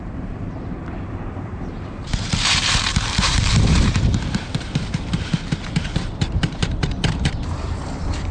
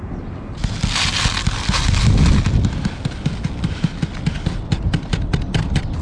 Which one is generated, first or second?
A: first